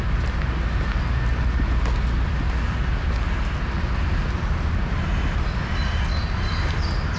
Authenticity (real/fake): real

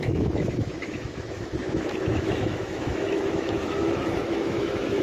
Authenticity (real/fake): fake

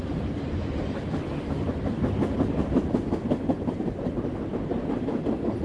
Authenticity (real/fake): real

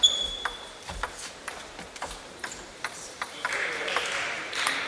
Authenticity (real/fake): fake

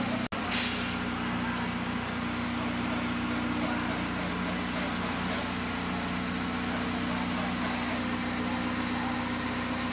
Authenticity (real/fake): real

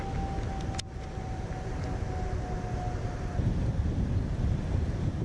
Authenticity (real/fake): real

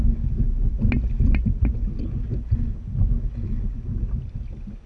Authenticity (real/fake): real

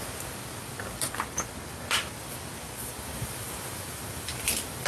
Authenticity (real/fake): fake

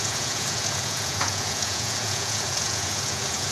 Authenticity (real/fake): fake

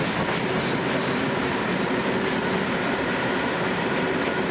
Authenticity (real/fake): real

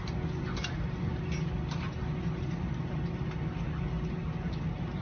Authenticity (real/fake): real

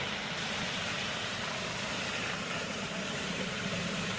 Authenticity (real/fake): fake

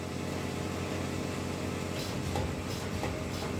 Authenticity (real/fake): real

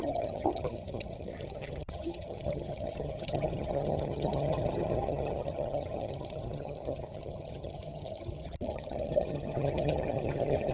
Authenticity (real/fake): fake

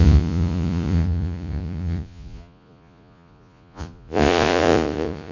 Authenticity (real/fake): fake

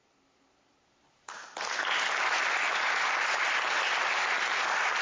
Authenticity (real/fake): real